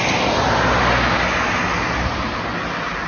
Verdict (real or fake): real